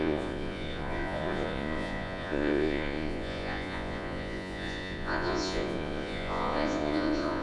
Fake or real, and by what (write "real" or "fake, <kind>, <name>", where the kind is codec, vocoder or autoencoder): fake, vocoder, Vocos